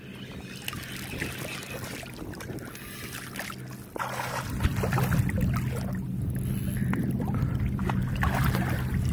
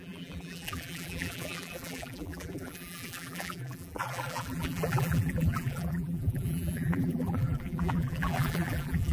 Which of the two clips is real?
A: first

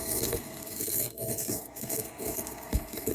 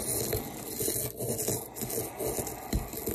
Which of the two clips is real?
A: second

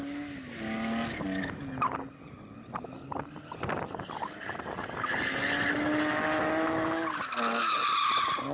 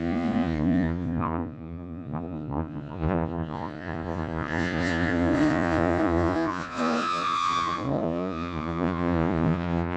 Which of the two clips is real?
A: first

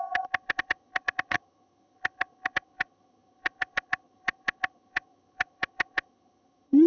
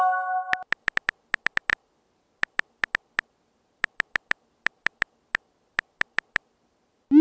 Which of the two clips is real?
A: second